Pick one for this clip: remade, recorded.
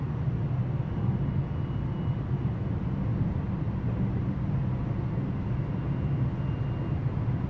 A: recorded